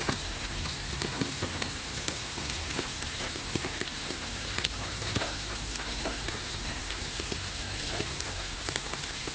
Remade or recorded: remade